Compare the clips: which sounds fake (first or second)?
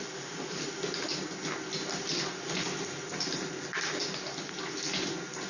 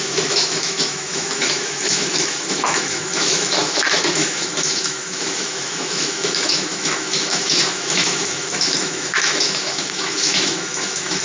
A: second